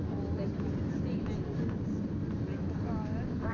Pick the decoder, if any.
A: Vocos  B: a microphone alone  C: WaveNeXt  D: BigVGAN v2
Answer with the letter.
B